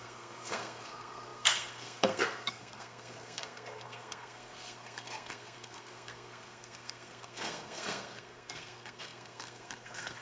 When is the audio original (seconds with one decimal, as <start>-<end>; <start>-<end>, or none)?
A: none